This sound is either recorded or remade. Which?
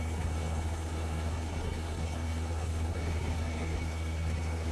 remade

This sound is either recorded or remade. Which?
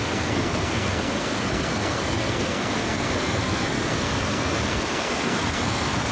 remade